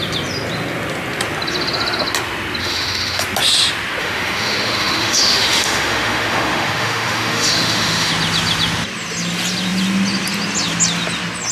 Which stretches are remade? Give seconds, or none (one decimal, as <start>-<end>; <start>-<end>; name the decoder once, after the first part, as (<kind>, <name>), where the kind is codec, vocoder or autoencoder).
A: 2.6-3.2 (autoencoder, DAC-VAE); 4.0-8.1